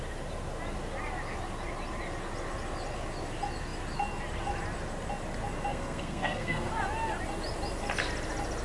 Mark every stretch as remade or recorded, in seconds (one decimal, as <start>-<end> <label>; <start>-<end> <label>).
0.0-5.7 recorded; 5.7-6.7 remade; 6.7-8.6 recorded

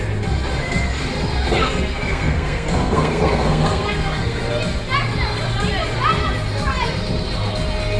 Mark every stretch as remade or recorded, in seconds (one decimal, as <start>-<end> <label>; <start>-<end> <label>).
0.0-1.6 recorded; 1.6-4.4 remade; 4.4-8.0 recorded